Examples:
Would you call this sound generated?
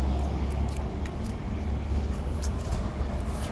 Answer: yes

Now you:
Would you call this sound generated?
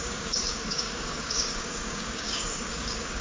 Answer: yes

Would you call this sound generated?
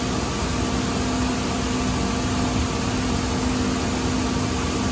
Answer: no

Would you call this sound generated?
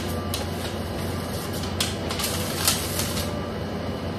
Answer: no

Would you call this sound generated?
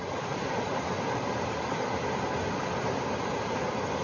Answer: no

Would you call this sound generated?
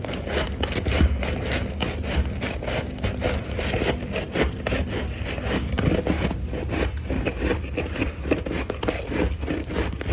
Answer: no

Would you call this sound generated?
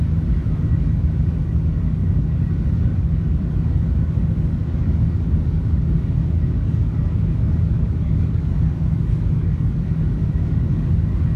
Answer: yes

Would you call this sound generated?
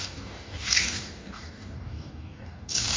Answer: yes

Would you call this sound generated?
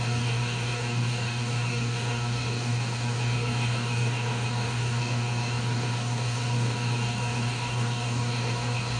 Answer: yes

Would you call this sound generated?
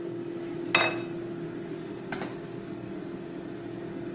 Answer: no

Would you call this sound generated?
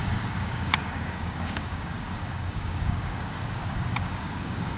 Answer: yes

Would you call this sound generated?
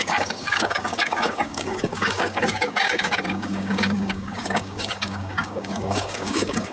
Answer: yes